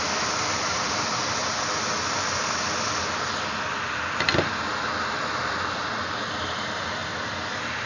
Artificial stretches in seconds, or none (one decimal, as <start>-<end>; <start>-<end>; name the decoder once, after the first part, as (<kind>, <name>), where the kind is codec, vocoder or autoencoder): 0.0-1.4 (vocoder, BigVGAN v2); 3.4-7.0